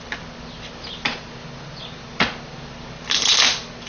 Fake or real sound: real